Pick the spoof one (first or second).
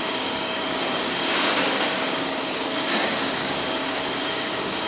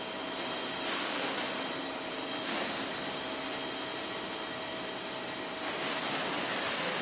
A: first